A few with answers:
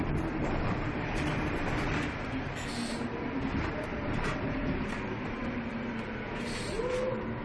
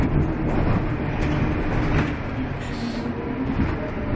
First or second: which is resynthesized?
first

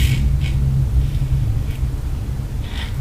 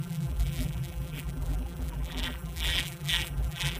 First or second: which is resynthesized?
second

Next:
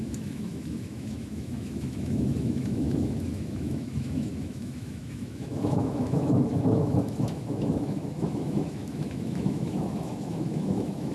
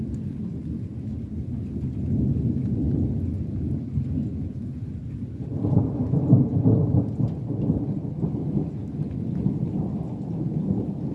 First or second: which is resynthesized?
first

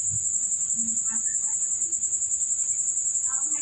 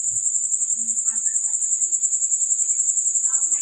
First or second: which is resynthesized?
second